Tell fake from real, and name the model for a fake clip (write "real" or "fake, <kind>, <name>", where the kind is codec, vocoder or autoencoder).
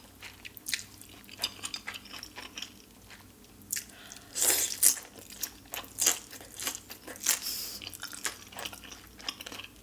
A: real